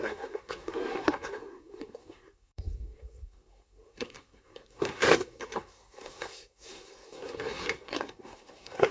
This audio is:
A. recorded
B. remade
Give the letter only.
B